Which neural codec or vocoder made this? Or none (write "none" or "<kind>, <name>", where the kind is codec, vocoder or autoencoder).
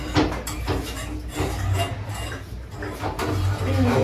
none